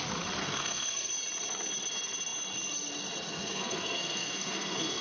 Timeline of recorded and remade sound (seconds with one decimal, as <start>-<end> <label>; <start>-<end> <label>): 0.0-0.4 recorded; 0.4-1.1 remade; 1.1-3.3 recorded; 3.3-5.0 remade